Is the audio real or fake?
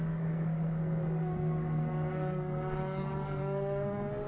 fake